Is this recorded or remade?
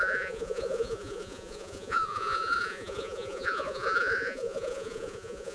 remade